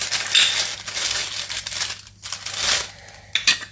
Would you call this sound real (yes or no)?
yes